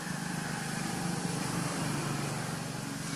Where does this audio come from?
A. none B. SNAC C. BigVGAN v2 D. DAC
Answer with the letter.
A